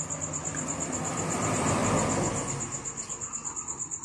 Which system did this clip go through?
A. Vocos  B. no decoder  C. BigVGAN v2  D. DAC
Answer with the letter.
B